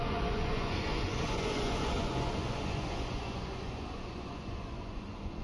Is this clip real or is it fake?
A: fake